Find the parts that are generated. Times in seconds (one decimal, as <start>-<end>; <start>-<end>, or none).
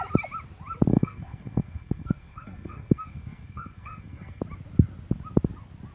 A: 0.9-4.4